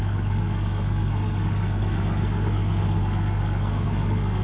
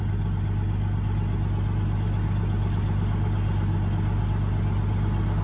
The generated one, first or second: first